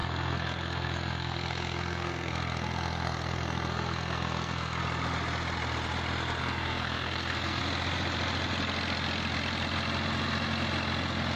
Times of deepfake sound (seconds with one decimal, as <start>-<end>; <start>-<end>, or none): 0.0-4.8; 6.4-7.6